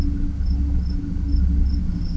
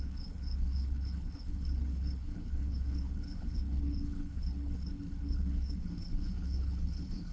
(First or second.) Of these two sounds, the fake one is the second